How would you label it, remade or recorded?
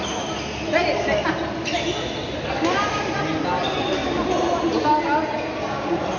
recorded